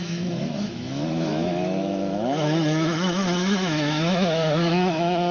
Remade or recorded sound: remade